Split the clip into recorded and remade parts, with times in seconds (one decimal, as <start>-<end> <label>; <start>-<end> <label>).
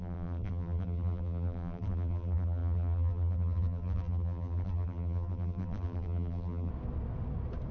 0.0-6.7 remade; 6.7-7.7 recorded